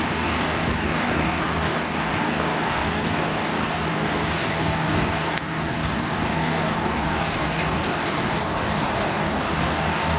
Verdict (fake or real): fake